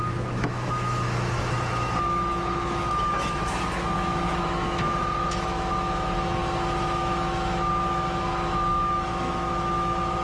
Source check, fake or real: fake